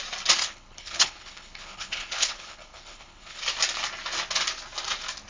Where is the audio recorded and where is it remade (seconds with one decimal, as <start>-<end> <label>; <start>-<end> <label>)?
0.0-0.4 recorded; 0.4-3.4 remade; 3.4-5.3 recorded